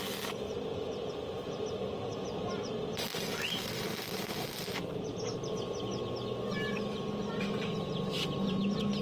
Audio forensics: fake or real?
real